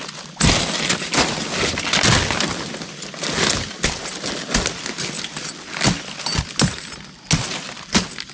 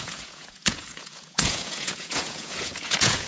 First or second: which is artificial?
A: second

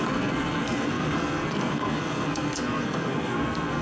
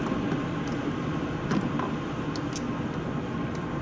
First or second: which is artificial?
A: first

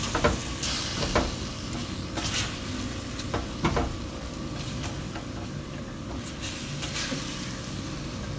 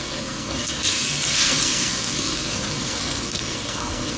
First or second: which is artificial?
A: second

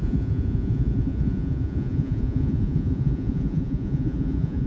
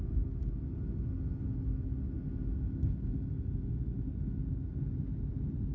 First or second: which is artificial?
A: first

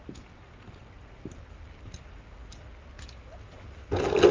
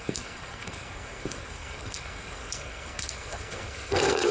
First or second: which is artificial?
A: second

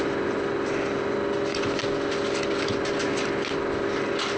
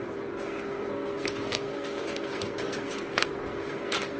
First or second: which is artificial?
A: second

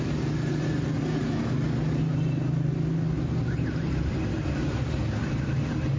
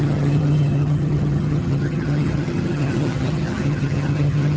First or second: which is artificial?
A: second